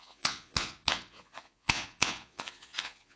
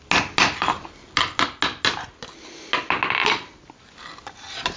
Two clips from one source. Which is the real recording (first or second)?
second